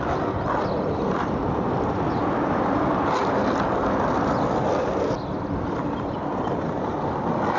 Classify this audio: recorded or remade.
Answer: recorded